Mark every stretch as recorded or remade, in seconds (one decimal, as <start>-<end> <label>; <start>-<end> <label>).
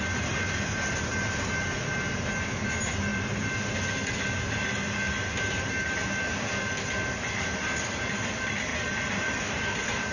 0.0-10.1 recorded